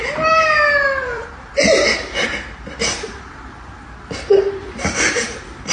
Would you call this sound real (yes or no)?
no